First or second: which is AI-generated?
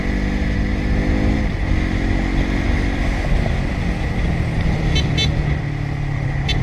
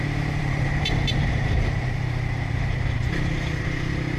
second